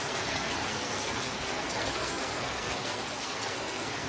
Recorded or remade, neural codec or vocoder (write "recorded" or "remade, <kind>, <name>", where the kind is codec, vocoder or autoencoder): remade, codec, SNAC